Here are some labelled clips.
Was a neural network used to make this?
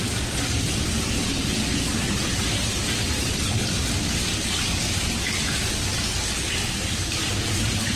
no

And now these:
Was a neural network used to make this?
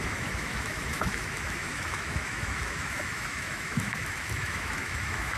yes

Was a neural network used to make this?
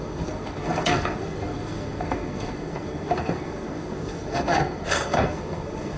yes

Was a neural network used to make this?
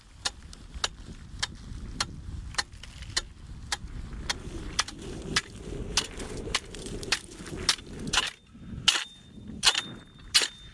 no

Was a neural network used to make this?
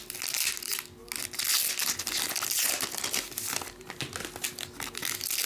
no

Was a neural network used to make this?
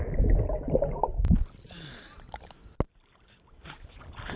no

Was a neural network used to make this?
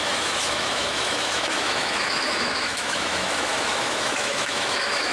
yes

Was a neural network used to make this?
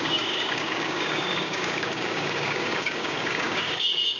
yes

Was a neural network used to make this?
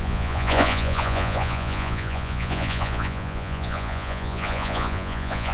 yes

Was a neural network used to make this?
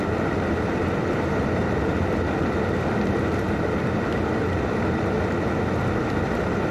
no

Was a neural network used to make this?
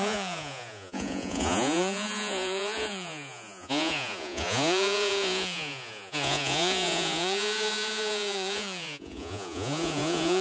yes